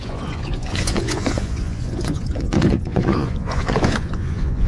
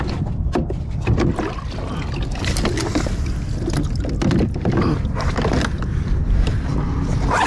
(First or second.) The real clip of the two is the second